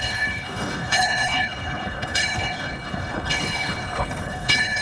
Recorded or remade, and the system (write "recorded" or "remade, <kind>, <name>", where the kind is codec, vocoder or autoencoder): remade, codec, HILCodec